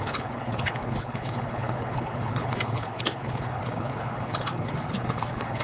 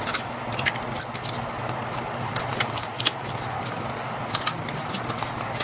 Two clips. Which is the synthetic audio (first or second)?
first